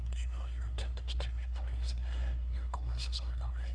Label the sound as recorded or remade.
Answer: remade